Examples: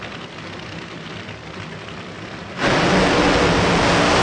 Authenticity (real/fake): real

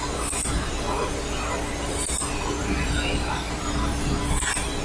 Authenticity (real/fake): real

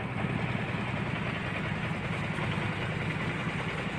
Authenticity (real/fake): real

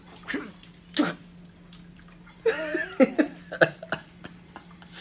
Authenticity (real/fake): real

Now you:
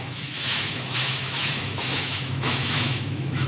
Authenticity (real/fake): fake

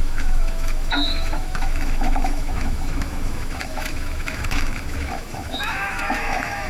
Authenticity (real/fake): fake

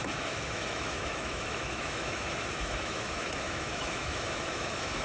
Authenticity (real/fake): fake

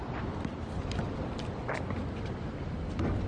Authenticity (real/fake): real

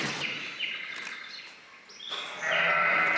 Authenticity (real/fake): real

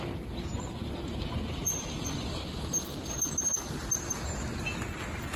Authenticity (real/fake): real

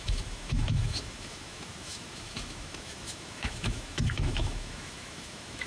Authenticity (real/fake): fake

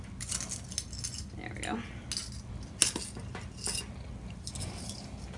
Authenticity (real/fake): real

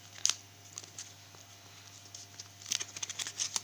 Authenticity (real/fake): real